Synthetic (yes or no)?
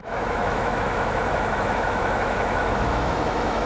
yes